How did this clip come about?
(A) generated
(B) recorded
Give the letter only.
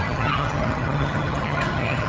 A